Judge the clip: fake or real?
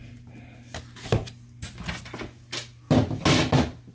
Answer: real